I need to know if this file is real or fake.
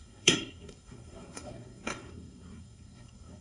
fake